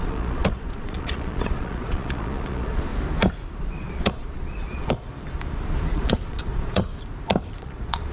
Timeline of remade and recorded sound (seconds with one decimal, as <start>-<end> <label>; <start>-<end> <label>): 0.0-2.9 remade; 2.9-3.6 recorded; 3.6-5.1 remade; 5.1-5.9 recorded; 5.9-6.9 remade; 6.9-7.6 recorded; 7.6-8.1 remade